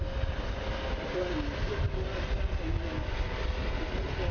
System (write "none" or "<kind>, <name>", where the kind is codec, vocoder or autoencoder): none